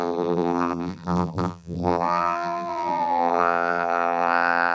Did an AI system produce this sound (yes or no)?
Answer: yes